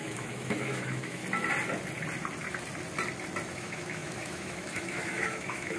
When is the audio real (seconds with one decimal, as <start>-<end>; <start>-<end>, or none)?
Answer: 1.2-3.5

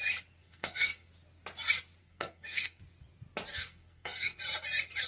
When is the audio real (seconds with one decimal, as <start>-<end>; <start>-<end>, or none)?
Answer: 0.0-0.4; 1.1-2.0; 2.8-3.5; 4.4-5.1

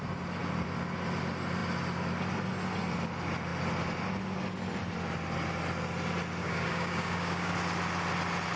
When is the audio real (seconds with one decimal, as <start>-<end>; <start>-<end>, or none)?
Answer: 0.0-6.4; 7.5-8.6

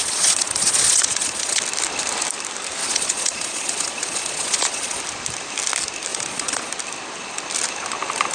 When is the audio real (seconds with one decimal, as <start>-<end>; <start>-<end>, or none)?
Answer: 1.6-2.8; 5.0-6.1; 6.7-8.3

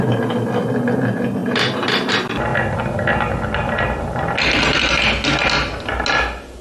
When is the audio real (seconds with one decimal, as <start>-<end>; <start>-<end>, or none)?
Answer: 0.0-1.4; 2.1-6.6

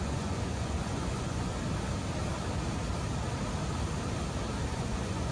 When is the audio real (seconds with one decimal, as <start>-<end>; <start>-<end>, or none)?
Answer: 1.5-4.7

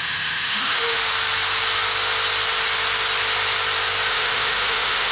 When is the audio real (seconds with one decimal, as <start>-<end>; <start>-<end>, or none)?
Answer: 1.0-4.1